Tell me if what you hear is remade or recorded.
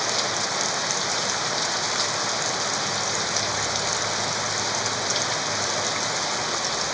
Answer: recorded